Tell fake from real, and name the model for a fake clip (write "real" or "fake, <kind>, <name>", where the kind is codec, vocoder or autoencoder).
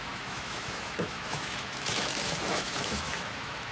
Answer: fake, autoencoder, DAC-VAE